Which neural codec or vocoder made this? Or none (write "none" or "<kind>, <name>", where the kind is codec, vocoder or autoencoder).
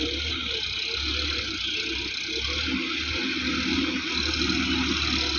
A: none